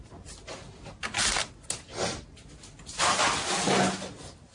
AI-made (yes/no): no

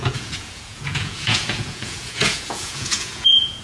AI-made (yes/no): yes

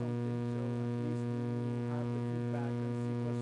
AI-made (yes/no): no